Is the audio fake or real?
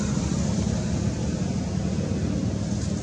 real